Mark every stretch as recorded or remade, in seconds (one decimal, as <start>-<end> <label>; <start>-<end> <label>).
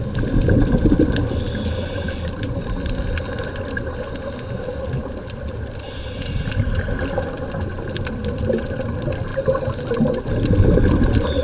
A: 0.0-11.4 recorded